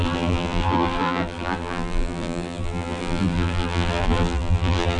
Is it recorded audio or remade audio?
remade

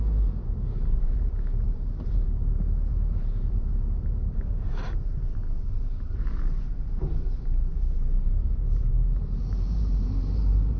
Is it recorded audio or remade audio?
remade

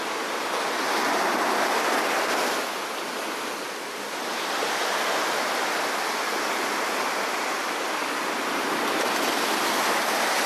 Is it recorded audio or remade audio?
recorded